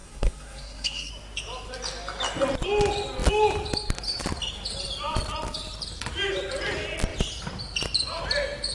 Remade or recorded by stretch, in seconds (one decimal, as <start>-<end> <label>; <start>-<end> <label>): 0.0-1.1 remade; 1.1-8.7 recorded